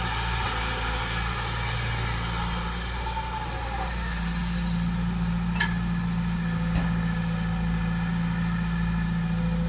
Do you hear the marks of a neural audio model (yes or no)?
no